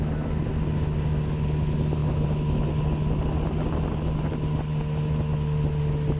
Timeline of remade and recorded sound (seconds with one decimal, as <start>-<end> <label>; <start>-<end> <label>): 0.0-6.2 recorded